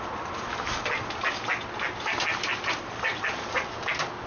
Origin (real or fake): real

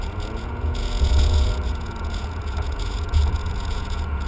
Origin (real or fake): fake